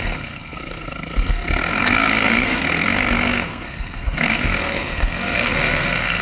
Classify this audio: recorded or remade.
remade